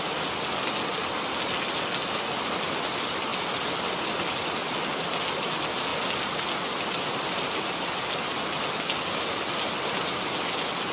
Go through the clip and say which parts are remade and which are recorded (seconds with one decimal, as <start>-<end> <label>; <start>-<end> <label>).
0.0-10.9 recorded